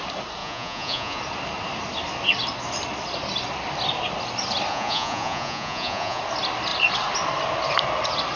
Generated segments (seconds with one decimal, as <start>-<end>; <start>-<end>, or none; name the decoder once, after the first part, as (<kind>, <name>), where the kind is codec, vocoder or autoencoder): 0.4-1.2 (vocoder, Vocos); 4.7-6.2